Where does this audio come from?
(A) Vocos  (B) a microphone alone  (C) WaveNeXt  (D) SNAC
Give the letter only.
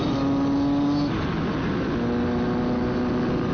B